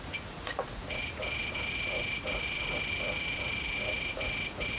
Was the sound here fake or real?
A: fake